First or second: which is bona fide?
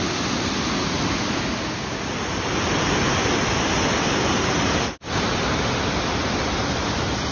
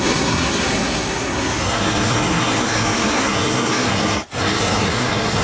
first